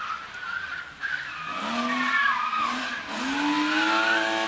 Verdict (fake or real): real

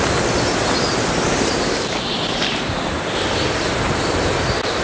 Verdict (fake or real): real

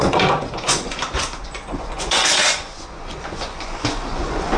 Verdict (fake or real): fake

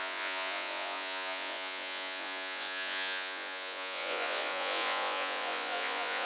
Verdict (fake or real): fake